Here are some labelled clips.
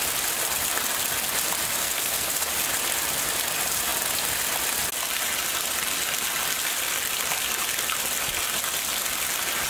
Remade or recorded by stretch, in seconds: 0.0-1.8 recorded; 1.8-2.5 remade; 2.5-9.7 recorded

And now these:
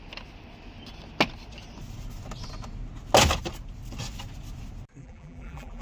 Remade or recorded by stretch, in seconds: 0.0-5.0 recorded; 5.0-5.8 remade